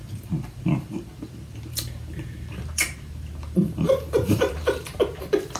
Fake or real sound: fake